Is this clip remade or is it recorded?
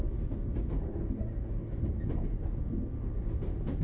recorded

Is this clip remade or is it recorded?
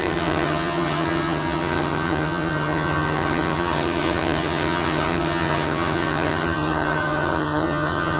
remade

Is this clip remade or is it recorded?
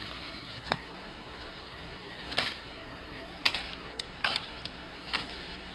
remade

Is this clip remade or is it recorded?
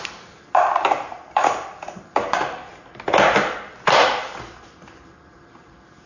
remade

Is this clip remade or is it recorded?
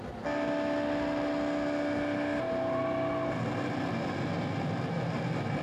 recorded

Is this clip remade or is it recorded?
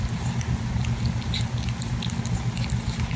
recorded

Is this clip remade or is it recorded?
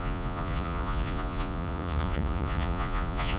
remade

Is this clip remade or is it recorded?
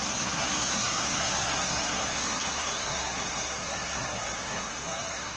remade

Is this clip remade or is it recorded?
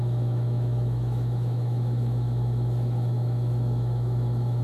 remade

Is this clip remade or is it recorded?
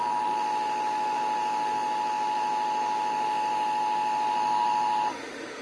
remade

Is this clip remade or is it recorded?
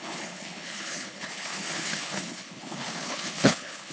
remade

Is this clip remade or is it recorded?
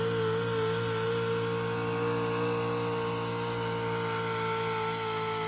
recorded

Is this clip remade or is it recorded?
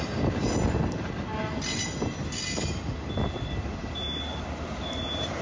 recorded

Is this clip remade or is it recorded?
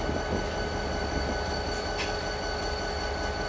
recorded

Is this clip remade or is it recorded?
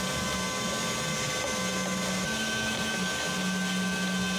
recorded